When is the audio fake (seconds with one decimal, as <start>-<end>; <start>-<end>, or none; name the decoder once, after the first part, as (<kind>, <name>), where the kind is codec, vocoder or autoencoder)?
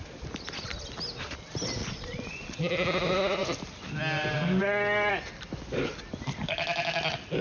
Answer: 1.8-2.6 (vocoder, Vocos)